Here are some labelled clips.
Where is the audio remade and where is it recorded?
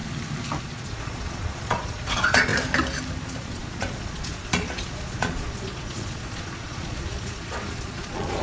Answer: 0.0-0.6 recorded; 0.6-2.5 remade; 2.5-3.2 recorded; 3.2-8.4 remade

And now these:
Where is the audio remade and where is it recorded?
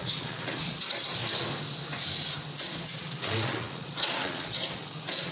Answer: 0.0-1.2 remade; 1.2-2.6 recorded; 2.6-5.3 remade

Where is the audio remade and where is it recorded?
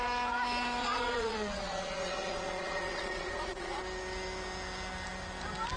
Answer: 0.0-0.8 recorded; 0.8-3.8 remade; 3.8-5.8 recorded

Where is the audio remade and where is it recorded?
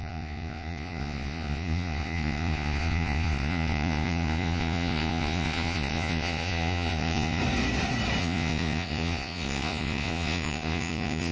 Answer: 0.0-7.4 remade; 7.4-8.2 recorded; 8.2-11.3 remade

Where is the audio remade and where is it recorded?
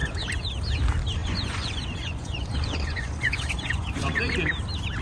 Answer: 0.0-0.6 remade; 0.6-1.2 recorded; 1.2-4.2 remade; 4.2-5.0 recorded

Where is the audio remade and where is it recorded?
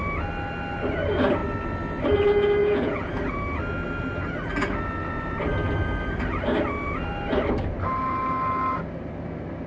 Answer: 0.0-2.6 recorded; 2.6-3.1 remade; 3.1-9.7 recorded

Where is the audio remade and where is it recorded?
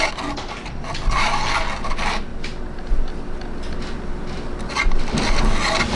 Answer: 0.0-6.0 recorded